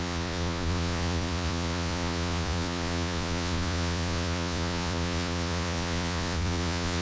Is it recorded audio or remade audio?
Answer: remade